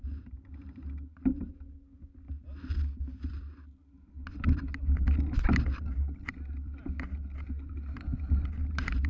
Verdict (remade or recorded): recorded